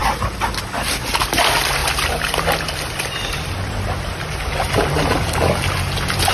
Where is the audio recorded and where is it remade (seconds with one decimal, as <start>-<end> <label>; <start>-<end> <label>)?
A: 0.0-6.3 recorded